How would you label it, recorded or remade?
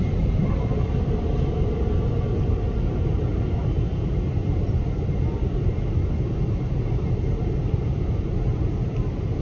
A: recorded